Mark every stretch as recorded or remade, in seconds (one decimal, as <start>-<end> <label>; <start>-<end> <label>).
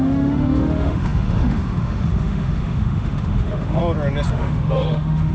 0.0-3.8 remade; 3.8-4.3 recorded; 4.3-5.3 remade